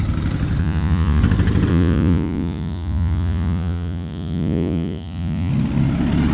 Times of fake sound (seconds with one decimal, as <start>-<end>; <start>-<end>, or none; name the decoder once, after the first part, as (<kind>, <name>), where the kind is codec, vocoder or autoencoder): 0.6-1.2 (vocoder, Vocos); 1.7-5.5